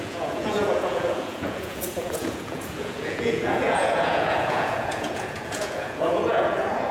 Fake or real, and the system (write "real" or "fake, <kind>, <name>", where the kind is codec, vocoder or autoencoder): fake, vocoder, Vocos